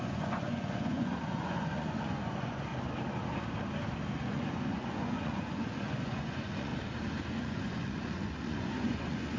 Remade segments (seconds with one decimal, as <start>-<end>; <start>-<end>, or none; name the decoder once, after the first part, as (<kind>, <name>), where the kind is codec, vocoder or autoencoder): 0.0-2.7 (vocoder, Vocos); 4.3-6.7; 7.3-9.4